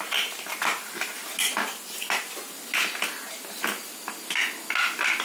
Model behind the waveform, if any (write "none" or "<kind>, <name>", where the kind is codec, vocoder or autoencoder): none